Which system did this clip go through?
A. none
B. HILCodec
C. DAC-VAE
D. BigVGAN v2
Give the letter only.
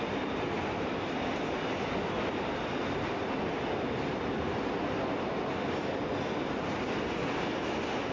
A